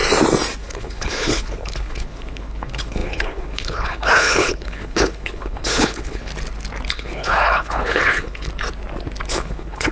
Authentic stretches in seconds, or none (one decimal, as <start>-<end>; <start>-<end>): 0.0-0.6; 6.3-6.9; 8.5-9.3